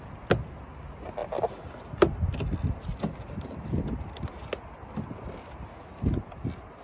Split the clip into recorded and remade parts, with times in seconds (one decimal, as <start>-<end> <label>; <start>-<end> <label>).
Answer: 0.0-6.8 recorded

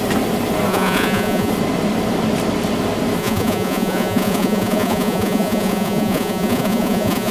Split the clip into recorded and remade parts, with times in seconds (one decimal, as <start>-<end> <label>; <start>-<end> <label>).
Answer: 0.0-0.7 recorded; 0.7-1.5 remade; 1.5-3.2 recorded; 3.2-7.3 remade

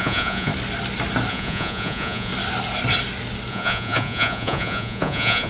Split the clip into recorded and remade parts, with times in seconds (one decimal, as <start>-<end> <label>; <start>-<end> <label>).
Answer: 0.0-0.5 remade; 0.5-1.3 recorded; 1.3-2.3 remade; 2.3-3.5 recorded; 3.5-5.5 remade

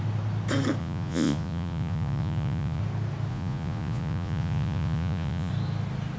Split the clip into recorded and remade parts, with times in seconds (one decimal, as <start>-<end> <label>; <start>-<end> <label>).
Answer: 0.0-0.8 recorded; 0.8-2.8 remade; 2.8-3.3 recorded; 3.3-5.5 remade; 5.5-6.2 recorded